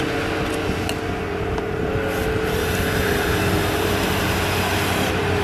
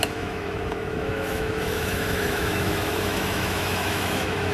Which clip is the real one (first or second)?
first